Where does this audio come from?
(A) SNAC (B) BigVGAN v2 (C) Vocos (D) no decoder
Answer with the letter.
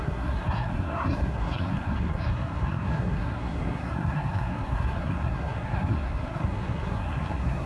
A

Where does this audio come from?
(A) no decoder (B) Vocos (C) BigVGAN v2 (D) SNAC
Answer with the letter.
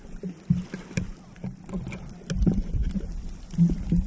A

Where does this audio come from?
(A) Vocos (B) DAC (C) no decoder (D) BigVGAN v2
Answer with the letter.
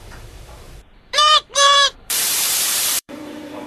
D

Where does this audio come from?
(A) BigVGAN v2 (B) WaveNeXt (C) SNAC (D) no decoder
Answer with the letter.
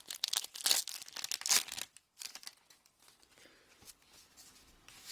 D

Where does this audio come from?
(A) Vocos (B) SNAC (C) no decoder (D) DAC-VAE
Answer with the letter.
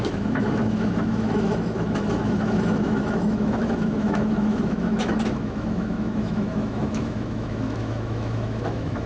D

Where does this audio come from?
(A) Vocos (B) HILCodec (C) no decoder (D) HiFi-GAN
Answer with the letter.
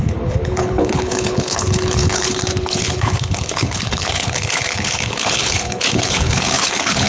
B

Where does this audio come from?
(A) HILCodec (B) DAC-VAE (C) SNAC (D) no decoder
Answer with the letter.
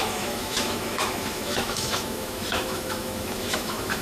B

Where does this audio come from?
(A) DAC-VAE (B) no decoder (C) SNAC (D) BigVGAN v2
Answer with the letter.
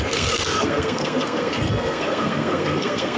C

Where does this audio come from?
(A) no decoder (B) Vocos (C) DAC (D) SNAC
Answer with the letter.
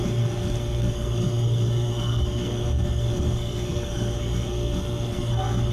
D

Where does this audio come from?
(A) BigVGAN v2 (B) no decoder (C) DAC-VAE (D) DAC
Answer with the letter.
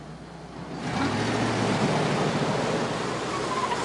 B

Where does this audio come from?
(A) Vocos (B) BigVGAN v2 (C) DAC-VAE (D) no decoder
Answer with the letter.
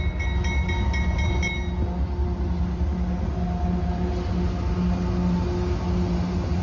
D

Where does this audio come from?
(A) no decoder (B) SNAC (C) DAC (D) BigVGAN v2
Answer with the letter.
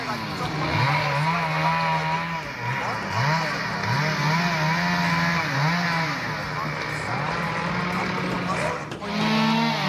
A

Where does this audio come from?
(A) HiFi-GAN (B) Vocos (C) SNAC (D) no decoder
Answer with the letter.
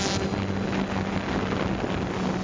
D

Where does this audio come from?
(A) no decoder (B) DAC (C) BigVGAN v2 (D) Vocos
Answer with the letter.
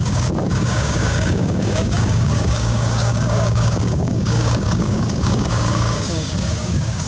B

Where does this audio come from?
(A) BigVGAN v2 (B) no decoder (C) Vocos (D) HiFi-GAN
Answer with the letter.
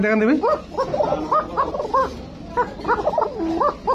B